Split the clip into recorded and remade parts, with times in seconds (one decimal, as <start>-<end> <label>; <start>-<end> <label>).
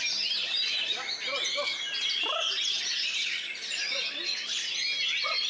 0.0-5.5 recorded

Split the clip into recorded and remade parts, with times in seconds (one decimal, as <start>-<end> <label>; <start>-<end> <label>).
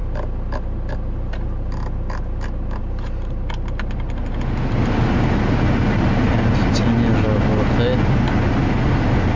0.0-9.4 recorded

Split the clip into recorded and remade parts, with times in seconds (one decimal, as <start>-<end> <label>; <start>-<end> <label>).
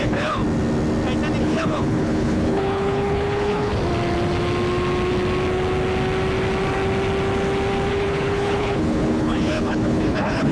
0.0-0.4 remade; 0.4-1.4 recorded; 1.4-3.7 remade; 3.7-7.9 recorded; 7.9-10.5 remade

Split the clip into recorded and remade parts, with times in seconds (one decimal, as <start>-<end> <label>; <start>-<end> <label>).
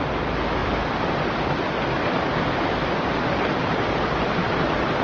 0.0-5.0 recorded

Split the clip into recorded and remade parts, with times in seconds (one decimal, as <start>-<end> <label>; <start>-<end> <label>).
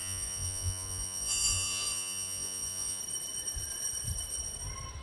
0.0-3.0 remade; 3.0-5.0 recorded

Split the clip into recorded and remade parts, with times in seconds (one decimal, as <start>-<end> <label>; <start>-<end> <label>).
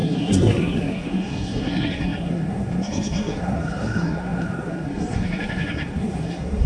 0.0-6.7 remade